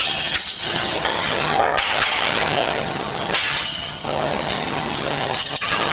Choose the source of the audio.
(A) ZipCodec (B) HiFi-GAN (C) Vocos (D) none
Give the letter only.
B